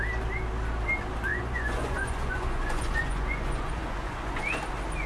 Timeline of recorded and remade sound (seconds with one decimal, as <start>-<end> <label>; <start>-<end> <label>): 0.0-1.3 recorded; 1.3-4.4 remade; 4.4-5.1 recorded